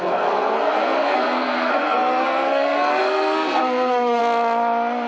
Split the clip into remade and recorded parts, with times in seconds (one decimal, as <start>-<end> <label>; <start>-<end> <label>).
0.0-4.2 remade; 4.2-5.1 recorded